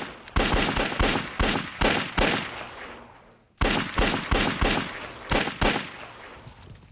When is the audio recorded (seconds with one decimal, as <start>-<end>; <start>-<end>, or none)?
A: 0.0-6.9